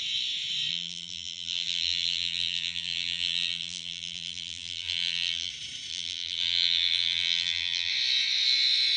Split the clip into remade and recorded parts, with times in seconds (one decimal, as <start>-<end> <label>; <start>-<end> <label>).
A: 0.0-0.7 recorded; 0.7-5.5 remade; 5.5-5.9 recorded; 5.9-7.9 remade; 7.9-9.0 recorded